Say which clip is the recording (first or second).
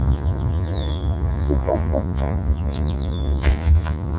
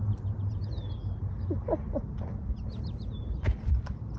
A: second